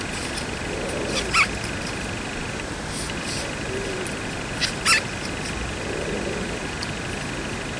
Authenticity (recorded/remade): recorded